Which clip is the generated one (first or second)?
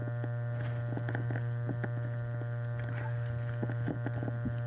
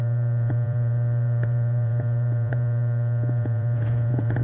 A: second